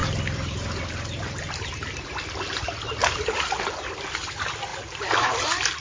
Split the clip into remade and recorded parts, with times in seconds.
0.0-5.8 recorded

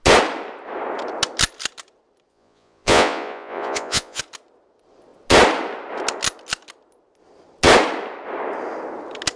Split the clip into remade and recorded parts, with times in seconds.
0.0-2.3 recorded; 2.3-4.2 remade; 4.2-9.4 recorded